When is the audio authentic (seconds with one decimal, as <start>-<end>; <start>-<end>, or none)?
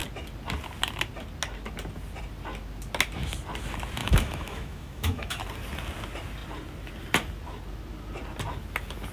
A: 0.0-4.0; 5.4-9.1